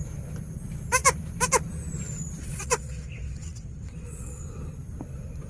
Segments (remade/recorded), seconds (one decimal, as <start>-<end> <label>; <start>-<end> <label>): 0.0-2.4 recorded; 2.4-4.4 remade; 4.4-5.5 recorded